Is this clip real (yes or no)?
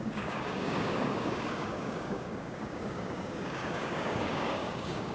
no